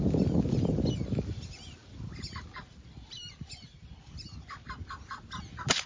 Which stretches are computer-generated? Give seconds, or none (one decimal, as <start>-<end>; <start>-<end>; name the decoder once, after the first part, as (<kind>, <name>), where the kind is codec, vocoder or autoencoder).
none